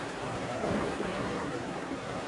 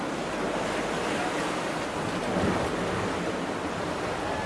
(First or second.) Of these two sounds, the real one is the second